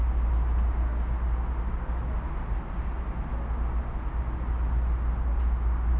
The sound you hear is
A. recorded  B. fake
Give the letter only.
A